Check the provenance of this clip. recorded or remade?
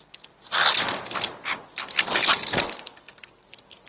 recorded